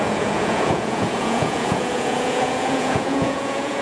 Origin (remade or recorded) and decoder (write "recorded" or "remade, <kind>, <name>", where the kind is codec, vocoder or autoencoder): remade, vocoder, Vocos